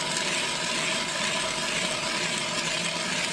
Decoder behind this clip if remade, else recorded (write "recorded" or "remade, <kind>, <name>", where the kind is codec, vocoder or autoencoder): recorded